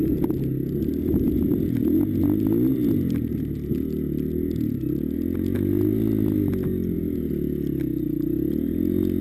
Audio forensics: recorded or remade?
recorded